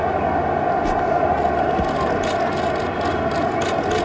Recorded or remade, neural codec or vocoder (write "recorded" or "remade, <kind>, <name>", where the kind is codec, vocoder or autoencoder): recorded